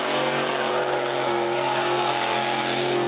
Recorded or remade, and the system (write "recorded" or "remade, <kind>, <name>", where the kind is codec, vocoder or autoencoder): remade, codec, SNAC